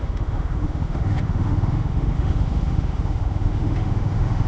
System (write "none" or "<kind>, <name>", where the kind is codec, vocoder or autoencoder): autoencoder, DAC-VAE